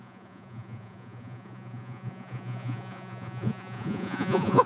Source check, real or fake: fake